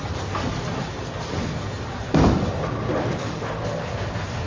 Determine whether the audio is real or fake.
real